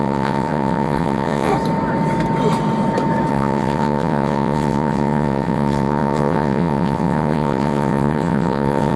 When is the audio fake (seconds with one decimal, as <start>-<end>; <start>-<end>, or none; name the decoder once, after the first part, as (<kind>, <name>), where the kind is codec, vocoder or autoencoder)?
0.0-1.5 (vocoder, WaveNeXt); 3.3-9.0